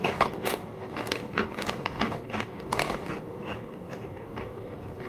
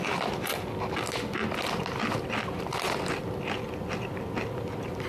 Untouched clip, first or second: second